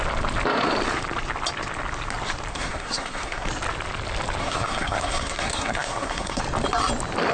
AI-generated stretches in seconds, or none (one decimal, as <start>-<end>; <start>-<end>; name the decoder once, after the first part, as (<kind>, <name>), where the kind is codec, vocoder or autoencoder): 2.5-3.5 (codec, SNAC); 4.4-6.4